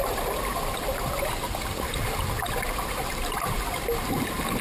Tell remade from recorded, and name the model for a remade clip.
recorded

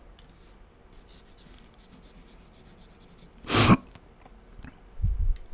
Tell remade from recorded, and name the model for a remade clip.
recorded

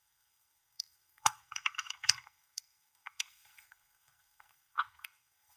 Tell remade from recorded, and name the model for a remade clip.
remade, codec, SNAC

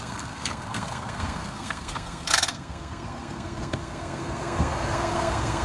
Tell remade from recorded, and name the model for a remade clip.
remade, codec, SNAC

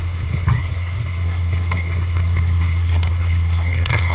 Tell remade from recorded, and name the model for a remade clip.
remade, codec, SNAC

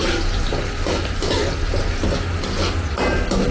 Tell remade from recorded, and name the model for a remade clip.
recorded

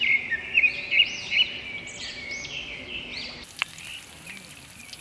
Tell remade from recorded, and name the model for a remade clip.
recorded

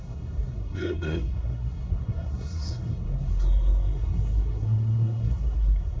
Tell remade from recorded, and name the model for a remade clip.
remade, codec, SNAC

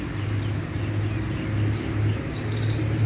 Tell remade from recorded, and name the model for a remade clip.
recorded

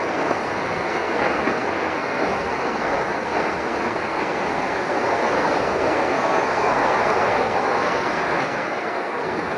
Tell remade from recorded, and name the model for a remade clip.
remade, codec, SNAC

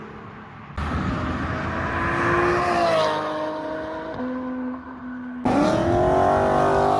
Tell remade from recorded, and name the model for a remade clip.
recorded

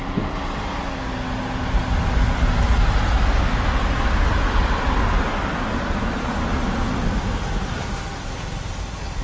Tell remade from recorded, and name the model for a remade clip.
recorded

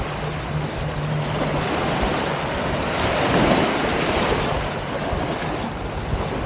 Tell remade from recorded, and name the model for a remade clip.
recorded